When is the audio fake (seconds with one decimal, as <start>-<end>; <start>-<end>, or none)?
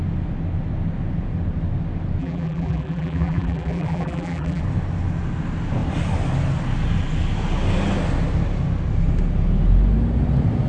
2.2-4.6